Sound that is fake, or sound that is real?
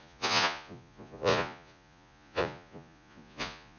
fake